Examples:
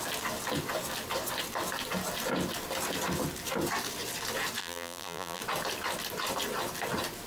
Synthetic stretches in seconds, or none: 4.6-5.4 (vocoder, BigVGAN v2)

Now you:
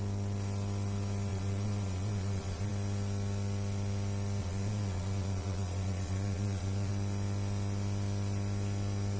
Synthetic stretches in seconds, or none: 1.3-2.7 (vocoder, Vocos); 4.4-6.9

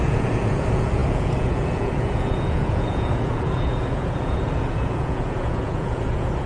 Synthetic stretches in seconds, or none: 0.0-6.5 (vocoder, Vocos)

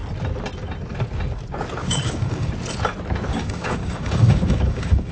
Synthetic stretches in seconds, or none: 1.8-2.5 (codec, DAC); 3.3-5.1

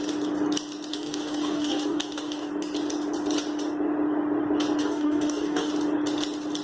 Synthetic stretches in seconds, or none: 0.9-2.5 (codec, DAC); 4.8-5.7

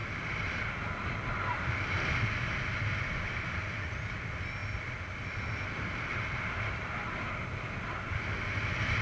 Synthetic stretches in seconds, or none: none